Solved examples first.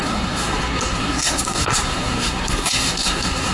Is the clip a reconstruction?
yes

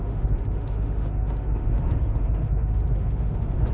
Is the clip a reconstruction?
yes